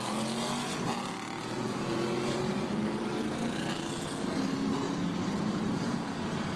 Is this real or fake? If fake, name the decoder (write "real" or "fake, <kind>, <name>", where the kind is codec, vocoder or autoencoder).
real